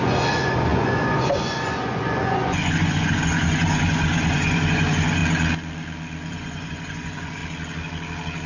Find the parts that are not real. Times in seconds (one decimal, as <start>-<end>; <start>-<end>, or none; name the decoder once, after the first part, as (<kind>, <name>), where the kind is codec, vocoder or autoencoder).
0.0-5.2 (vocoder, Vocos); 6.3-7.4